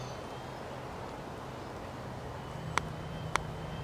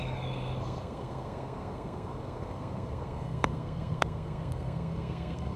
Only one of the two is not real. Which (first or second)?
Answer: second